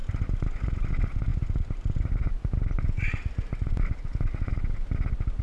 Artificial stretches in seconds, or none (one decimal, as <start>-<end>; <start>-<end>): 1.3-4.5